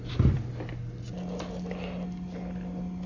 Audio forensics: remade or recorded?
recorded